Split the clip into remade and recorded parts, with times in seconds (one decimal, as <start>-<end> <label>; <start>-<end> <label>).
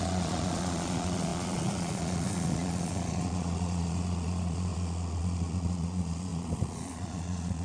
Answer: 0.0-7.6 remade